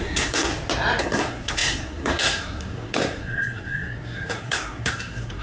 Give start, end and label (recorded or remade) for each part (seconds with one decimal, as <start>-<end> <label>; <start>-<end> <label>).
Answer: 0.0-0.5 remade; 0.5-1.0 recorded; 1.0-5.4 remade